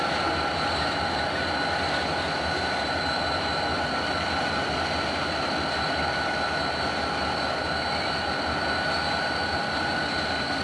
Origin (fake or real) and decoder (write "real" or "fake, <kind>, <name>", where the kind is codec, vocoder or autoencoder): real